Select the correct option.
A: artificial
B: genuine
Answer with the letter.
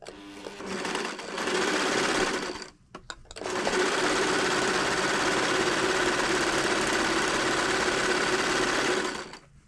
B